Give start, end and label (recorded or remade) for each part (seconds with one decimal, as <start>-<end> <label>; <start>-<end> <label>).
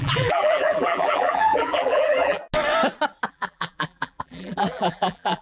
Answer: 0.0-2.4 remade; 2.4-3.3 recorded; 3.3-5.4 remade